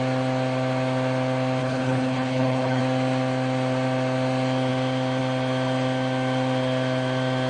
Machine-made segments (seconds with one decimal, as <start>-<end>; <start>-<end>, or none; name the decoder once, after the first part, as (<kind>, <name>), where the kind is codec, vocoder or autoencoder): 1.6-2.8 (codec, HILCodec)